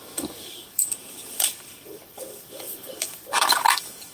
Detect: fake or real fake